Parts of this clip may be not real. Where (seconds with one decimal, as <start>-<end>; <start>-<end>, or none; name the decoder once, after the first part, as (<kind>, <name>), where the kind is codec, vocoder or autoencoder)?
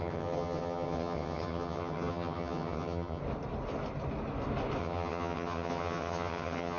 0.0-3.2 (vocoder, HiFi-GAN); 4.8-6.8